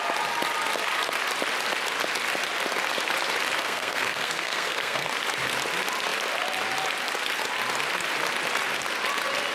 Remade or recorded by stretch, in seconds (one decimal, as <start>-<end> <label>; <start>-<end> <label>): 0.0-3.6 recorded; 3.6-5.1 remade; 5.1-9.5 recorded